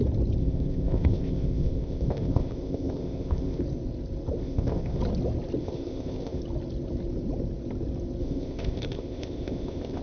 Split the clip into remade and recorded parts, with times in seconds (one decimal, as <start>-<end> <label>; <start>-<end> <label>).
0.0-0.4 recorded; 0.4-3.6 remade; 3.6-4.4 recorded; 4.4-5.0 remade; 5.0-5.6 recorded; 5.6-6.4 remade; 6.4-8.2 recorded; 8.2-10.0 remade